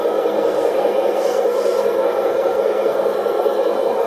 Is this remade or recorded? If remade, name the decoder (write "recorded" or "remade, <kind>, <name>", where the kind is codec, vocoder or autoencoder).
remade, codec, SNAC